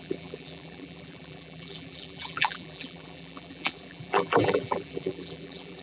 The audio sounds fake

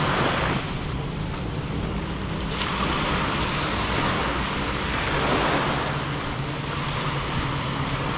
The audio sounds real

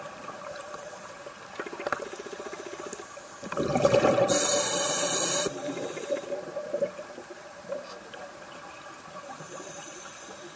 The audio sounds fake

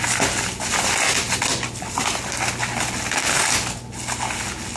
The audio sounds real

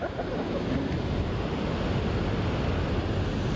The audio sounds real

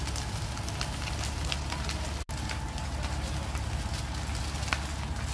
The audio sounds real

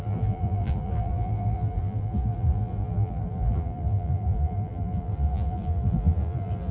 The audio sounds fake